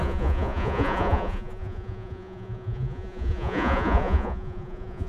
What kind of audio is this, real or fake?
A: fake